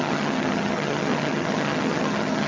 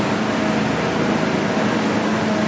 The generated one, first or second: first